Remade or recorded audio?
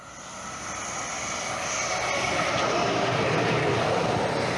recorded